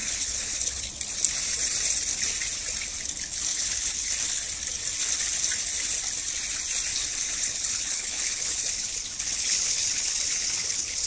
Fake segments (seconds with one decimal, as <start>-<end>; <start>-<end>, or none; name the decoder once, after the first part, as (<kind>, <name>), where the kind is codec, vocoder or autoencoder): 0.0-0.8 (codec, HILCodec); 3.5-4.1; 6.9-11.1